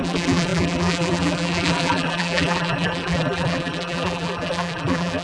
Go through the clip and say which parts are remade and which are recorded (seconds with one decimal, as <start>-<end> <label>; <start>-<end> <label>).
0.0-5.2 remade